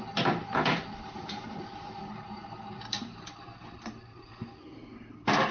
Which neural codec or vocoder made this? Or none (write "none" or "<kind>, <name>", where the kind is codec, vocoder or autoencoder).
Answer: none